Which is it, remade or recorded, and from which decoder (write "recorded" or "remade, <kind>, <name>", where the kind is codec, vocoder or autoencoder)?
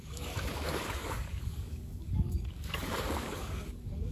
remade, codec, DAC